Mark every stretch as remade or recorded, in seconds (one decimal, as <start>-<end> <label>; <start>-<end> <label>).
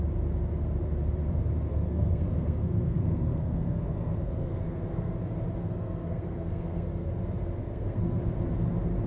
0.0-1.7 recorded; 1.7-5.1 remade; 5.1-5.6 recorded; 5.6-7.1 remade; 7.1-7.6 recorded; 7.6-8.2 remade; 8.2-9.1 recorded